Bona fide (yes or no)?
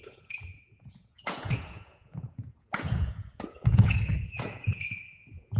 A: no